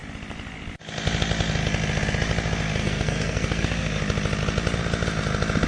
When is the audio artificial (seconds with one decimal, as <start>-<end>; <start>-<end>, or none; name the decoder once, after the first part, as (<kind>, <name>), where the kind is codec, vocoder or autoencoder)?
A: 2.8-4.0 (codec, SNAC)